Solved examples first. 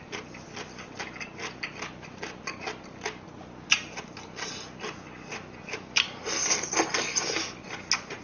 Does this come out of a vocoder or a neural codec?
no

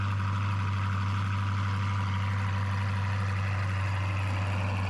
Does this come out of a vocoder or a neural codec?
no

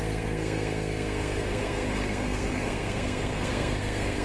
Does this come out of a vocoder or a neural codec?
yes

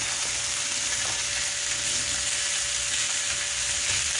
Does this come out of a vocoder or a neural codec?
no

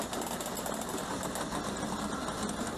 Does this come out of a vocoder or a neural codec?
no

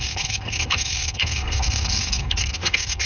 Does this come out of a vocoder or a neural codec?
yes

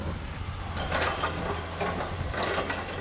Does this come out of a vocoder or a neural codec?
no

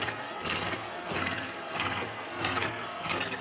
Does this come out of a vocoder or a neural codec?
yes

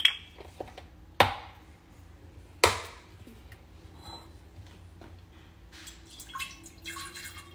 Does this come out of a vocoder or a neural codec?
no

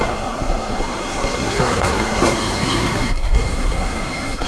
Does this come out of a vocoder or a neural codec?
yes